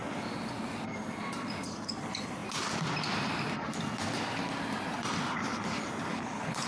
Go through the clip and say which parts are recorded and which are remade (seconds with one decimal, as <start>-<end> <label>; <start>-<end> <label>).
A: 0.0-6.1 recorded; 6.1-6.7 remade